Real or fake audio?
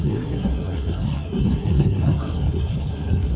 fake